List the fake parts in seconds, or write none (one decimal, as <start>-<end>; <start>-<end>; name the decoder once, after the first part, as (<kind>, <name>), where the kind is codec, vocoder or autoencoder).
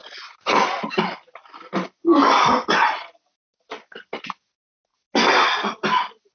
none